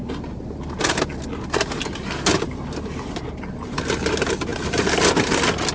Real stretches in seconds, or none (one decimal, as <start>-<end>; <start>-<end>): 0.0-5.7